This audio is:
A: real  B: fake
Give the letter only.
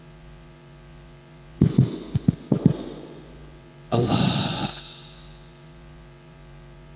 B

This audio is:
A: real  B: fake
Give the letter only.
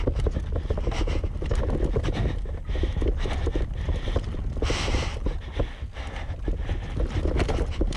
A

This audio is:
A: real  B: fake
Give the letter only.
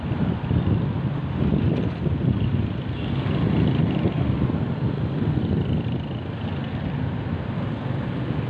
A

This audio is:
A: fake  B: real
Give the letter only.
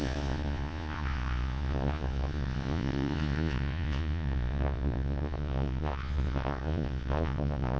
A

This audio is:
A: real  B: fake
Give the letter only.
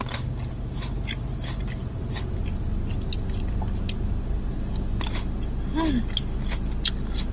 A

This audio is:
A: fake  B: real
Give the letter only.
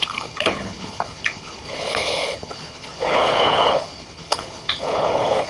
A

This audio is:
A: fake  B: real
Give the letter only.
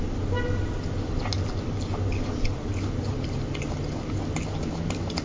B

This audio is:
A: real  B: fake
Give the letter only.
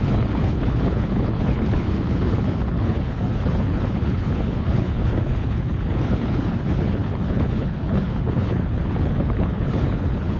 B